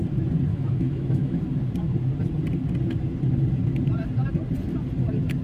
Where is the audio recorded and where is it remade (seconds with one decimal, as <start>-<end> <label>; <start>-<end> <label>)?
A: 0.0-0.5 recorded; 0.5-1.4 remade; 1.4-5.4 recorded